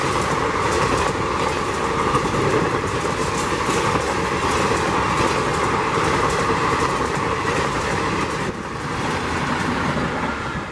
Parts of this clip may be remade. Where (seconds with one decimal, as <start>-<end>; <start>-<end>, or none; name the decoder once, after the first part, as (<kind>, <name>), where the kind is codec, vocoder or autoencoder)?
0.0-3.3 (vocoder, BigVGAN v2); 5.5-8.0